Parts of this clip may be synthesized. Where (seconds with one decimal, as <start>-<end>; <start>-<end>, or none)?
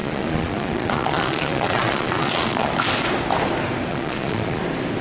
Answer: 0.0-2.7; 3.9-4.6